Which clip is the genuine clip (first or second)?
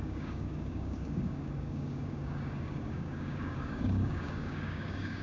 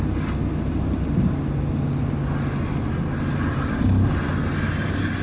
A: second